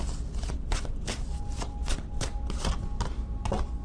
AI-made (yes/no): no